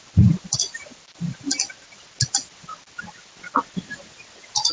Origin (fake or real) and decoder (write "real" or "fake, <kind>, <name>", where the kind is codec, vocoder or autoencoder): real